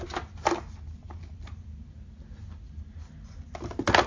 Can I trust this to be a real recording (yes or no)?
yes